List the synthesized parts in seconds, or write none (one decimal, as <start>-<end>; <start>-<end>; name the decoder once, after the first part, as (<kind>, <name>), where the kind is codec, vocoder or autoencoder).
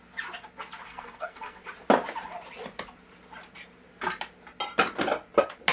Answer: 0.9-1.6 (codec, SNAC)